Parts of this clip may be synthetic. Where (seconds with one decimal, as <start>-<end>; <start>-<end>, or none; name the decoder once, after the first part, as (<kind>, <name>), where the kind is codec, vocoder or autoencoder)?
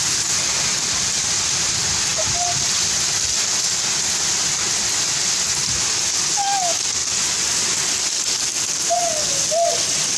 none